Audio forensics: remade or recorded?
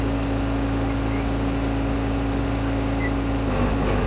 recorded